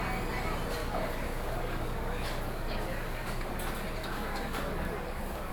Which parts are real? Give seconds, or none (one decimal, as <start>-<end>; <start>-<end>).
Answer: 0.0-0.8; 3.5-4.0